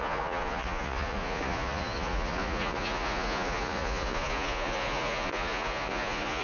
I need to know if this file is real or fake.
fake